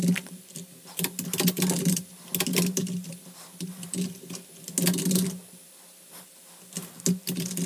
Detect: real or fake real